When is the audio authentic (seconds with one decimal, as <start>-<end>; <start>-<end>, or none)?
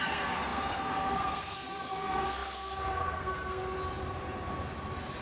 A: 3.6-5.2